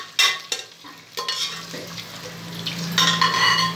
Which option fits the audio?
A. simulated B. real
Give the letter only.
B